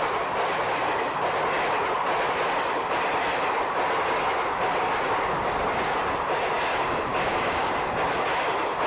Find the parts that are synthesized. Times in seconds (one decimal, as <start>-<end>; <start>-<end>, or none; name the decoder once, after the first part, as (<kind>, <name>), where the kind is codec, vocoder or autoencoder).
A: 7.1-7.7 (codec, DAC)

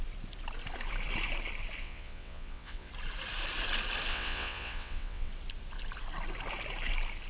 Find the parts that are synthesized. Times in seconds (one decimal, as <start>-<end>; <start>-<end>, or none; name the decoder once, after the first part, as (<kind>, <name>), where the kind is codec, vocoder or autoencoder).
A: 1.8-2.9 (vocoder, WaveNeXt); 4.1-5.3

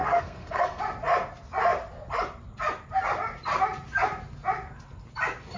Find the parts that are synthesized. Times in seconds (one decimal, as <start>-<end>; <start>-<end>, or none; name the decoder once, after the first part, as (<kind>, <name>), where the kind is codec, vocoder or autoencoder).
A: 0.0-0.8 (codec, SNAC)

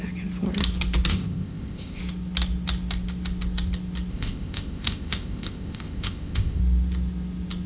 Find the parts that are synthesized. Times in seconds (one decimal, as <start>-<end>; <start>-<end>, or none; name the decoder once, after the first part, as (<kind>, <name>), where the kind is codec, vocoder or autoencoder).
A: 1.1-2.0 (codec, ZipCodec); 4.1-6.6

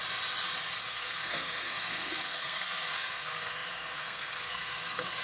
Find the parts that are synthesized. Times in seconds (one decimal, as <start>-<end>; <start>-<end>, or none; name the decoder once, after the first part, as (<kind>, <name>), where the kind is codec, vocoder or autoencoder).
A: 0.9-5.2 (codec, SNAC)

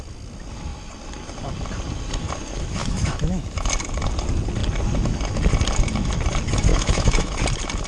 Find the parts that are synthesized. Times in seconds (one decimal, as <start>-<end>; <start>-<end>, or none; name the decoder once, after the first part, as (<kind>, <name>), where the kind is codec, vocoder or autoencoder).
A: 2.8-3.7 (autoencoder, DAC-VAE); 6.7-7.3

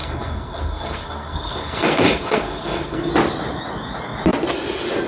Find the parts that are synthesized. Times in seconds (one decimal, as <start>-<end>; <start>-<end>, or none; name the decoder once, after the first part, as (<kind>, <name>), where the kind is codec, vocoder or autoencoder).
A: 0.0-3.1 (codec, SNAC)